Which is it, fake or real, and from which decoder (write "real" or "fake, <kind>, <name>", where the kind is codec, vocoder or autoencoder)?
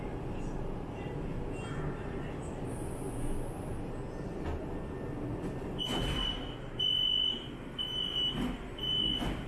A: real